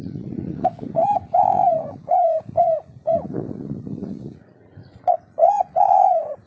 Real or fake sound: fake